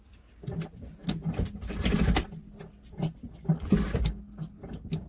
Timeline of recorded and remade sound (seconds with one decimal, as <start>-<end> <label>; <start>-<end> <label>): 0.0-5.1 recorded